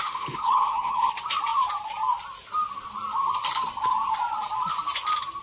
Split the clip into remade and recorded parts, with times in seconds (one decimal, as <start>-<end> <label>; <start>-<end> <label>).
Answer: 0.0-1.1 remade; 1.1-5.4 recorded